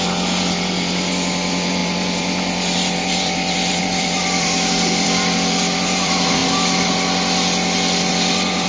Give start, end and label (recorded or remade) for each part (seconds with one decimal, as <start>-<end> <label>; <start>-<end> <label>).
0.0-6.4 remade; 6.4-8.1 recorded; 8.1-8.7 remade